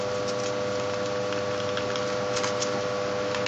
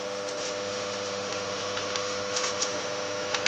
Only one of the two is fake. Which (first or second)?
second